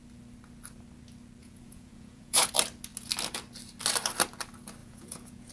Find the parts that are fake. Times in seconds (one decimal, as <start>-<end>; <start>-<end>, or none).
1.4-2.5; 4.8-5.5